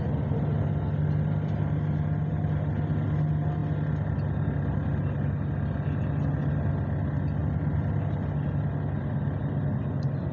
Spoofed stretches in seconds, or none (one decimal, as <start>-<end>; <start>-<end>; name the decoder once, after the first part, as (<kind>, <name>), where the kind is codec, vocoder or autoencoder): none